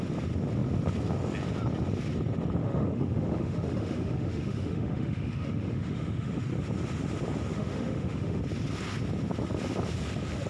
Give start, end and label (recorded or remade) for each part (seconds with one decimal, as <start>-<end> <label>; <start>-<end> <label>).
0.0-2.6 recorded; 2.6-6.4 remade; 6.4-7.5 recorded; 7.5-8.4 remade; 8.4-10.5 recorded